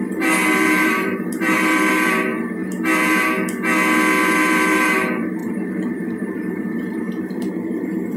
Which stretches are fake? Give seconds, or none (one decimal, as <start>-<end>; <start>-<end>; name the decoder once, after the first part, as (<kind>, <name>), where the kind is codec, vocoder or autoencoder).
0.0-2.3 (vocoder, BigVGAN v2); 4.2-8.2